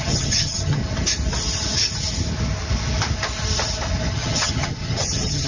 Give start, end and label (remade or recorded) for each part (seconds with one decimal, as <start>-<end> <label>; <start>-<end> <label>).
0.0-0.8 remade; 0.8-4.1 recorded; 4.1-5.5 remade